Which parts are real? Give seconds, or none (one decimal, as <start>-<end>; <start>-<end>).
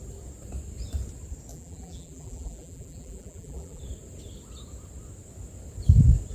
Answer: 0.0-1.5; 3.8-6.3